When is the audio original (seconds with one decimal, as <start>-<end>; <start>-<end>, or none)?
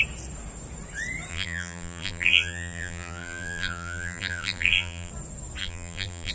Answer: 0.0-1.3; 5.1-5.6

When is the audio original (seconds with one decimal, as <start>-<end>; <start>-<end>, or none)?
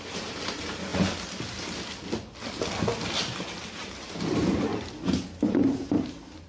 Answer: 0.9-3.7; 4.7-5.5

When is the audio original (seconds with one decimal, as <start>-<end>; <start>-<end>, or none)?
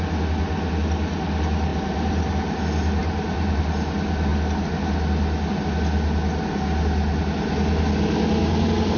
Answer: 0.0-1.7; 2.6-3.0; 3.6-9.0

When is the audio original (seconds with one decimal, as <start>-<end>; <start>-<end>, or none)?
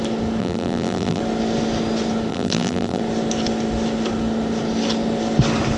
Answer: 0.0-0.4; 1.2-2.3; 3.0-5.8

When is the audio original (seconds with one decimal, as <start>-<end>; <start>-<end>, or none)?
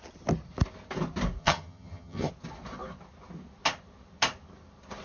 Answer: 0.0-1.4; 2.3-5.0